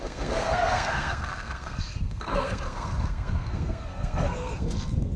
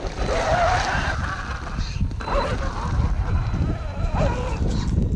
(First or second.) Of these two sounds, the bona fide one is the second